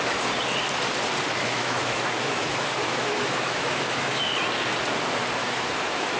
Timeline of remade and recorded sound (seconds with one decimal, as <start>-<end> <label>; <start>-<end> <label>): 0.0-1.4 recorded; 1.4-4.3 remade; 4.3-5.4 recorded; 5.4-6.2 remade